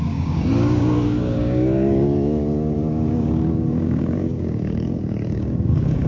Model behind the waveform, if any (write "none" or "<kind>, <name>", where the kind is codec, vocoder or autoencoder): codec, DAC